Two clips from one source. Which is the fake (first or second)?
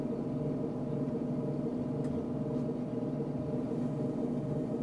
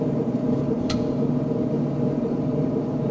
second